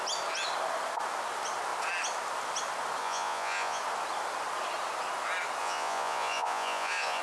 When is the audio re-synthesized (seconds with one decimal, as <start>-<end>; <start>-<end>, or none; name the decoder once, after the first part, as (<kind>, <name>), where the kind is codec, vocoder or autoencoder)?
3.0-3.8 (vocoder, Vocos); 5.6-7.2